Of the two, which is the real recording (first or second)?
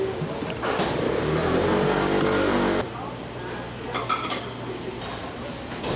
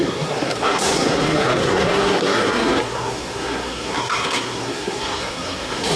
first